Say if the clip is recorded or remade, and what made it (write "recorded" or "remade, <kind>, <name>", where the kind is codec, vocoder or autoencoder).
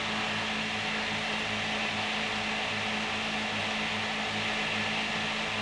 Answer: recorded